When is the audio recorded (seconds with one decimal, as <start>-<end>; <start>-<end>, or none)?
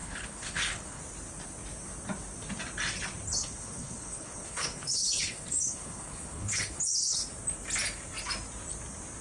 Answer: 1.0-3.4; 7.3-9.2